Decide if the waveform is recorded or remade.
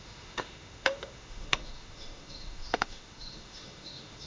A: remade